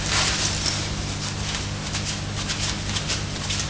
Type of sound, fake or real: real